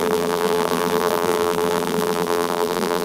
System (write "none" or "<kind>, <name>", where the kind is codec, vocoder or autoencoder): vocoder, BigVGAN v2